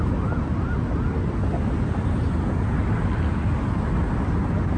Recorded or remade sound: recorded